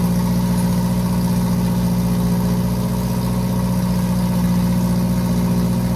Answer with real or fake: real